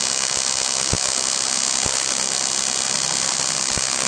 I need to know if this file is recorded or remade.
recorded